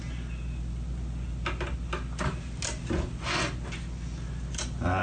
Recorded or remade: recorded